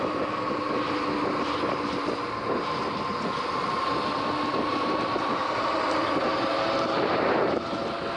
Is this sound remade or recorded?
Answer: recorded